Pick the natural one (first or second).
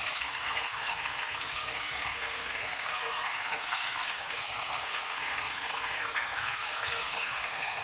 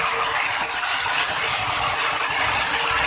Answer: second